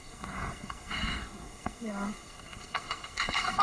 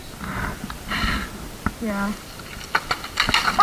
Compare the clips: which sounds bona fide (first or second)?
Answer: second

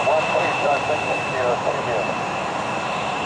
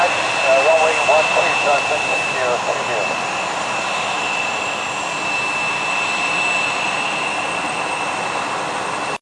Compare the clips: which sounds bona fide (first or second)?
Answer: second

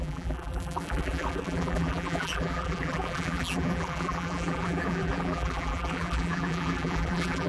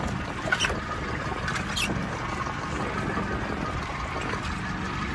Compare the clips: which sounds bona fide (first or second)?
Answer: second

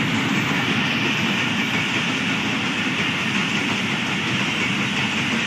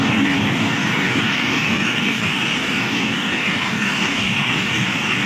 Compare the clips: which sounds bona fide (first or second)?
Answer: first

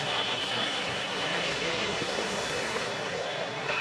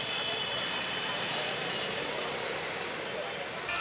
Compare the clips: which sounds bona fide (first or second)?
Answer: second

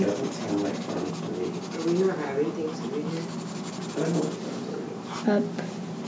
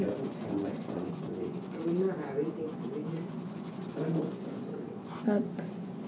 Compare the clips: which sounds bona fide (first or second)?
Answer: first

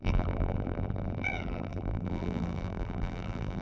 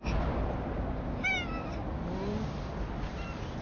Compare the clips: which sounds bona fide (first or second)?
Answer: second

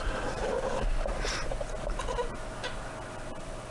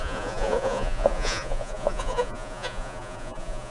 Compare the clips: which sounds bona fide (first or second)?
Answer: first